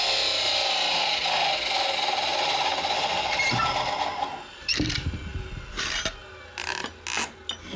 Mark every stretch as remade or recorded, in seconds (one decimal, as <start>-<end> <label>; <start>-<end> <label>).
0.0-7.8 recorded